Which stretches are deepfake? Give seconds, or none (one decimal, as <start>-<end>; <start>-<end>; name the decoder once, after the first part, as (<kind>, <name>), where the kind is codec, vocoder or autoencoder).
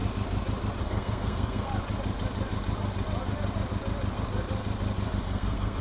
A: 0.8-1.7 (codec, SNAC); 5.2-5.8